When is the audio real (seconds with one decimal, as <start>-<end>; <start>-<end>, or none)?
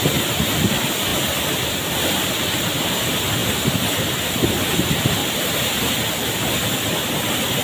0.0-1.1; 2.3-5.2; 5.8-7.6